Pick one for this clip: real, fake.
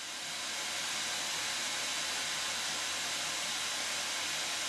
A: real